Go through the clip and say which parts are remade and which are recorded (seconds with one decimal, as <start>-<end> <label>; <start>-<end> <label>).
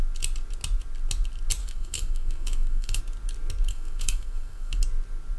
0.0-1.6 recorded; 1.6-3.0 remade; 3.0-3.7 recorded; 3.7-4.8 remade; 4.8-5.4 recorded